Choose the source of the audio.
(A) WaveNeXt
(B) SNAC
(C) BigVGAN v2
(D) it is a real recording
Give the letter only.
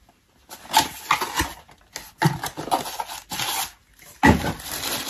D